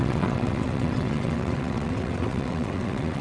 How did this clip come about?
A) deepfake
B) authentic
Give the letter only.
A